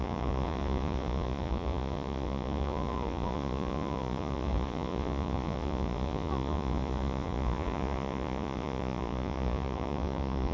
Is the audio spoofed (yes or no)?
yes